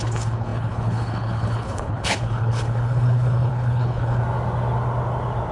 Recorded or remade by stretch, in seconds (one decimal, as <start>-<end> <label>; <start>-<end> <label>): 0.0-4.2 remade; 4.2-5.5 recorded